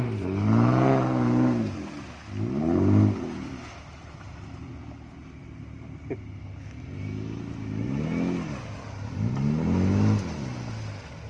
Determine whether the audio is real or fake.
real